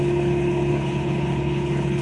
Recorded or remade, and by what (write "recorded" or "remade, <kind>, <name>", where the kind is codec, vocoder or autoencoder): remade, codec, HILCodec